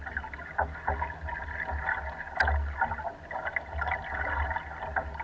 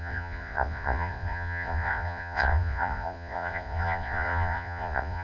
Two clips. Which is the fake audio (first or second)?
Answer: second